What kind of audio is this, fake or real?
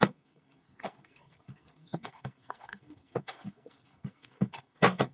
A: fake